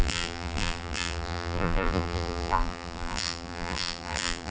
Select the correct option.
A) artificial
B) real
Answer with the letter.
A